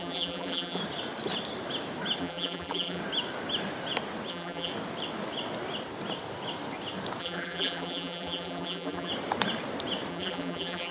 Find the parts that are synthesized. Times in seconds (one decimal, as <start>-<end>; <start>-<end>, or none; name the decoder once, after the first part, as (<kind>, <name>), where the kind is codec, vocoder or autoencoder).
0.0-0.8 (vocoder, BigVGAN v2); 2.2-3.0; 4.3-4.7; 7.2-9.1; 10.1-10.9